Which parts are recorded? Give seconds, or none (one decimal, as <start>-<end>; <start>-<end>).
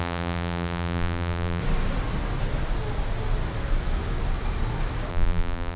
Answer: 1.6-5.1